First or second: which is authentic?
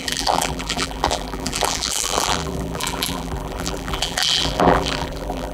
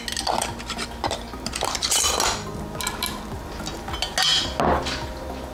second